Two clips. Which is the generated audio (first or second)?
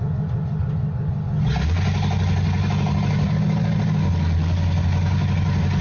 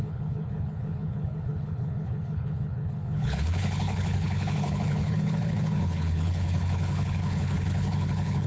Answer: second